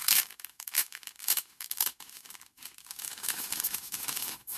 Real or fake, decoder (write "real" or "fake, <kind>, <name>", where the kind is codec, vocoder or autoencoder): fake, autoencoder, DAC-VAE